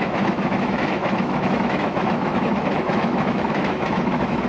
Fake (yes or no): yes